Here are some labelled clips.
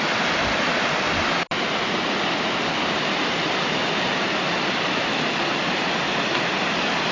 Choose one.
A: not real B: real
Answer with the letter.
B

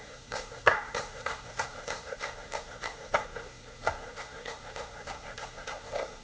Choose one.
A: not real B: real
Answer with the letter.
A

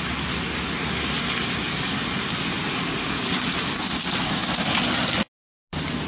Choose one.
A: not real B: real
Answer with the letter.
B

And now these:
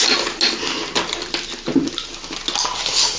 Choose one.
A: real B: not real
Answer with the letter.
A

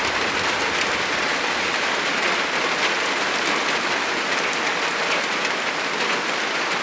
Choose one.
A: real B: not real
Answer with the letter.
A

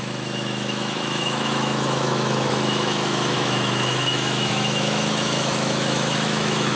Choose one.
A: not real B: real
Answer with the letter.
A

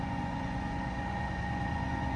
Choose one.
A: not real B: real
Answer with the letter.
A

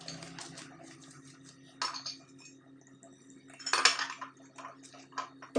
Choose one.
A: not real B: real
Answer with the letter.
B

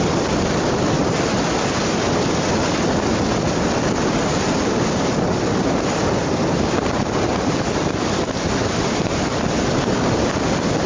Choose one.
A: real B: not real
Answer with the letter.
A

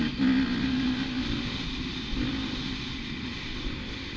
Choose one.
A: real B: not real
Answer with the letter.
A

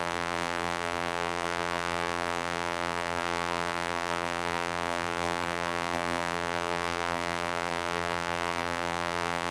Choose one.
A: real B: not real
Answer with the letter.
B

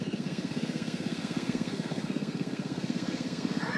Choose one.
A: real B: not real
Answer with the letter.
B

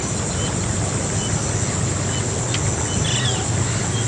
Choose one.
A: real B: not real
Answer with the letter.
A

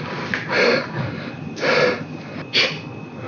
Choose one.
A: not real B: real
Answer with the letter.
B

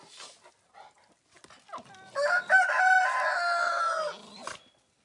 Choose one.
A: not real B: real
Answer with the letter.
B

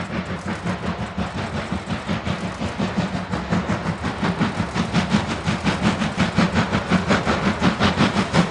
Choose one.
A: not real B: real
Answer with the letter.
B